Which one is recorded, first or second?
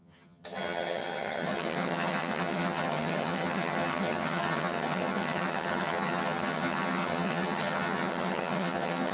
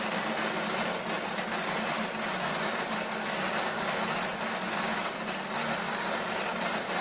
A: second